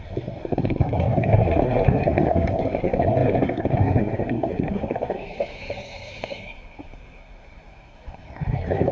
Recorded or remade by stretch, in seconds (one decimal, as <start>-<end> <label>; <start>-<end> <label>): 0.0-8.9 remade